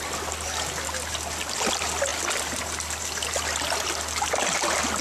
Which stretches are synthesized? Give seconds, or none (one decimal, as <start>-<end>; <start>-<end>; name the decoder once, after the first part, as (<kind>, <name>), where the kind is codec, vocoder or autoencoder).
none